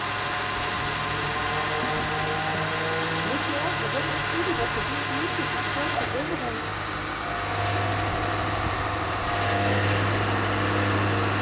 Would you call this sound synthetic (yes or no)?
no